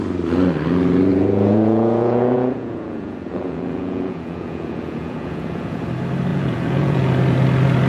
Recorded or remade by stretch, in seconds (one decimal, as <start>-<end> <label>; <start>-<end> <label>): 0.0-1.1 recorded; 1.1-5.8 remade; 5.8-6.3 recorded; 6.3-7.1 remade; 7.1-7.9 recorded